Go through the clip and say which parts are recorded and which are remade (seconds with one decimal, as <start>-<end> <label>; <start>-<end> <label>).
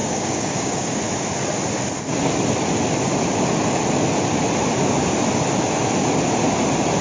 0.0-1.0 remade; 1.0-7.0 recorded